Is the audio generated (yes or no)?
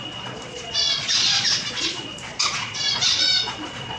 yes